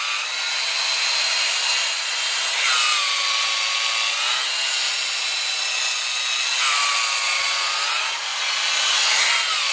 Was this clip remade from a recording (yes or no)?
no